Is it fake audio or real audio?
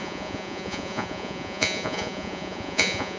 fake